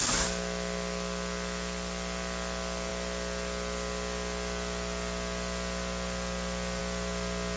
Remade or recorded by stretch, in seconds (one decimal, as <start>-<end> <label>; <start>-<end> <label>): 0.0-7.6 recorded